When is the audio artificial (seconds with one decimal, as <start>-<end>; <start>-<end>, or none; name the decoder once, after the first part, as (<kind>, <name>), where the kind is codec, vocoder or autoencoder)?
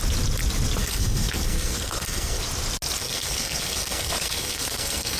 0.8-2.4 (codec, SNAC); 3.0-5.2